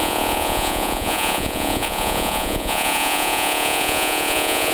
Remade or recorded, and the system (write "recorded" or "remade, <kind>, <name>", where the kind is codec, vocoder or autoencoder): remade, vocoder, Vocos